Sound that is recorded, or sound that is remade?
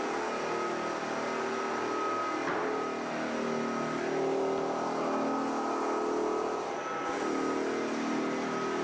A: recorded